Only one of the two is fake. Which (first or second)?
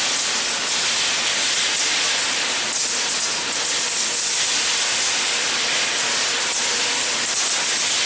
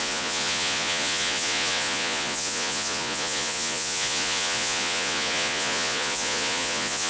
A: second